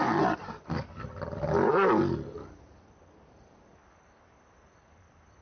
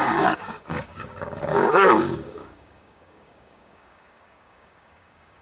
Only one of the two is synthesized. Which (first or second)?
second